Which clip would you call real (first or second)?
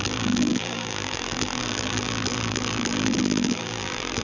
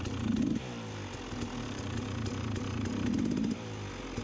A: second